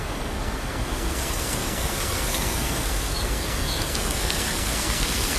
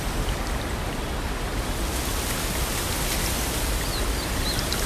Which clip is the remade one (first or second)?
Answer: first